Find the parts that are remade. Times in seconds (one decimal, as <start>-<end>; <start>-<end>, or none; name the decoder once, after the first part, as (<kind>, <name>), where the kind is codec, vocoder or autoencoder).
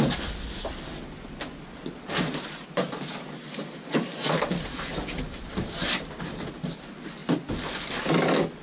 none